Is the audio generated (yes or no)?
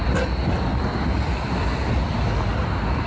no